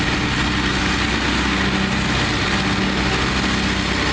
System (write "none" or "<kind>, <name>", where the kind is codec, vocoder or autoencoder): none